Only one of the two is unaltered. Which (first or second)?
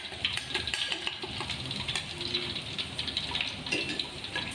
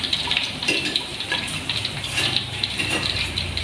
first